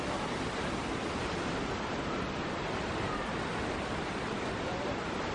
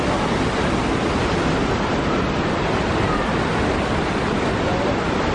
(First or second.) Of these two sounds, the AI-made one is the first